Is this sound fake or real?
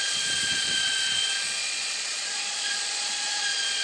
fake